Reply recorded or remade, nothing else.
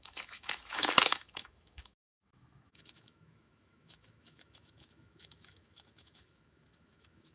remade